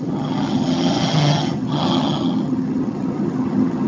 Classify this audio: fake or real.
fake